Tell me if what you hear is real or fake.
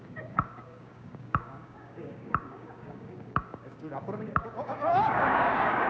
fake